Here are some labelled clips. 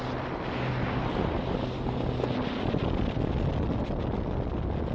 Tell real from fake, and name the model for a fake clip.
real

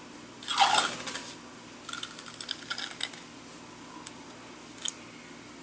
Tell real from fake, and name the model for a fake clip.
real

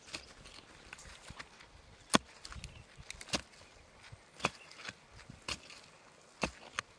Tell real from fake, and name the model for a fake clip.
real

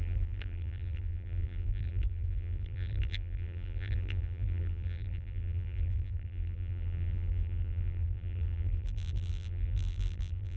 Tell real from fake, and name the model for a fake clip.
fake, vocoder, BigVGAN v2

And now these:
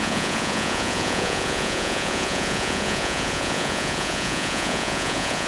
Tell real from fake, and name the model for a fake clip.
fake, vocoder, Vocos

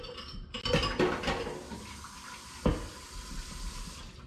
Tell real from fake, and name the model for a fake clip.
real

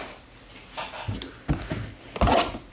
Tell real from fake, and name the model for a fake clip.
real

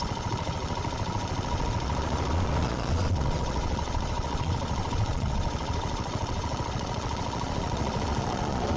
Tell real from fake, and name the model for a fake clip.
fake, vocoder, Vocos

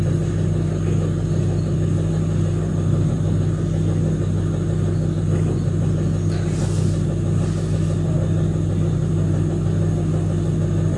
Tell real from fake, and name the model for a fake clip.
real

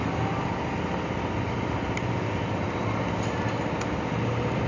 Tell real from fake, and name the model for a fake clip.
real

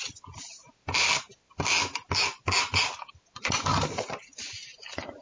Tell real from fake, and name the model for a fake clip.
real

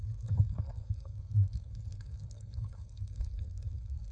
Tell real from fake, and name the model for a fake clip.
fake, codec, SNAC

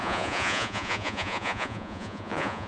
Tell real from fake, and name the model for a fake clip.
fake, vocoder, Vocos